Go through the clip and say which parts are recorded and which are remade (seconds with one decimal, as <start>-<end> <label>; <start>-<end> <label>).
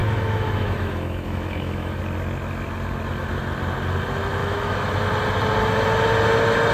0.0-2.0 remade; 2.0-4.4 recorded; 4.4-4.9 remade; 4.9-6.7 recorded